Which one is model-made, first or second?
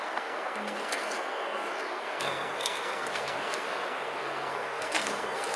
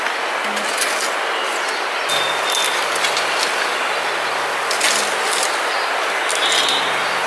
first